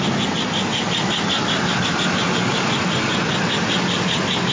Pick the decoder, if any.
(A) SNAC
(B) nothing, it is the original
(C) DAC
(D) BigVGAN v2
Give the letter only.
B